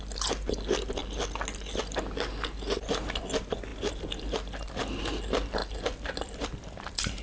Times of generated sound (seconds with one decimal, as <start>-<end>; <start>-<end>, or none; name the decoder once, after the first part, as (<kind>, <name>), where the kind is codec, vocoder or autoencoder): 5.6-6.8 (vocoder, BigVGAN v2)